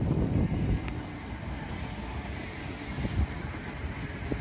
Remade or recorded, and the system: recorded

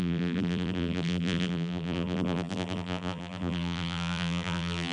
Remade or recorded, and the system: remade, vocoder, BigVGAN v2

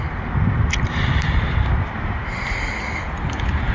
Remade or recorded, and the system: recorded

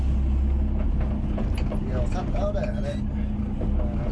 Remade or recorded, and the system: recorded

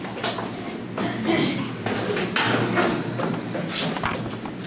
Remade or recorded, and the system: recorded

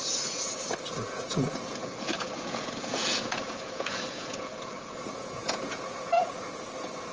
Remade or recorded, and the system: remade, vocoder, Vocos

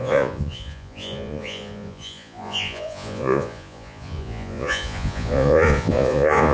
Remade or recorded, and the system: remade, vocoder, Vocos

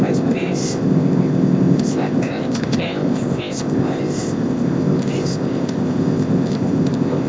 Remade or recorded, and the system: remade, codec, ZipCodec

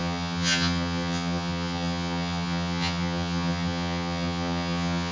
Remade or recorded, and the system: remade, vocoder, HiFi-GAN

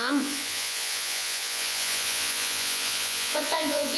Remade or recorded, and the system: remade, vocoder, Vocos